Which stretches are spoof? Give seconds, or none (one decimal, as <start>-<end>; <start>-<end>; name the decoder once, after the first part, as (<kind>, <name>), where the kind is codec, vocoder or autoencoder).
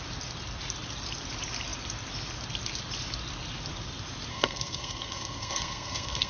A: 4.3-6.3 (codec, SNAC)